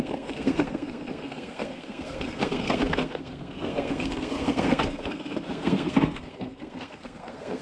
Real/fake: fake